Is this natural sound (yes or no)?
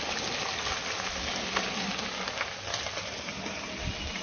yes